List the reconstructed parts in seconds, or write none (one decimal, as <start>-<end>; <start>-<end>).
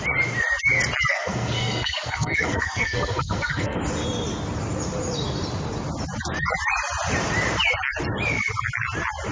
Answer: 1.1-3.8